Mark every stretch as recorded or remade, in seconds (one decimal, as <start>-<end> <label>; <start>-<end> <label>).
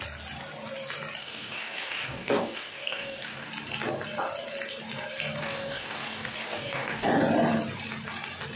0.0-1.2 recorded; 1.2-3.5 remade; 3.5-5.4 recorded; 5.4-7.1 remade; 7.1-8.6 recorded